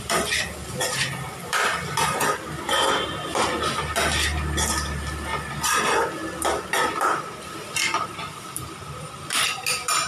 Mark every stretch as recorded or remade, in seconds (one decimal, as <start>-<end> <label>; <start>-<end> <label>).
0.0-10.1 recorded